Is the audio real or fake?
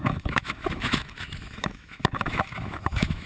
fake